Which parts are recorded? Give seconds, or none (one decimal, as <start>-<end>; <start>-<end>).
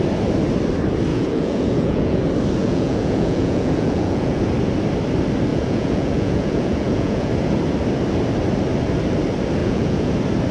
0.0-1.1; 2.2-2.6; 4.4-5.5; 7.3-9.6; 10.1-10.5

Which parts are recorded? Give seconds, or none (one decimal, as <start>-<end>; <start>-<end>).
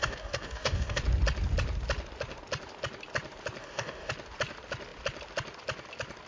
1.0-3.6; 4.1-6.3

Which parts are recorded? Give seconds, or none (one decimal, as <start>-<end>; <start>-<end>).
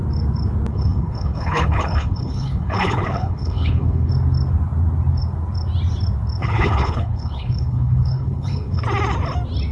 0.0-0.7; 4.1-6.4; 8.8-9.7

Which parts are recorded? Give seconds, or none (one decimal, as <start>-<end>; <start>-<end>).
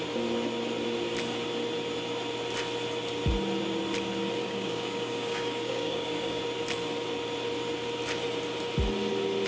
0.0-4.4; 6.4-9.5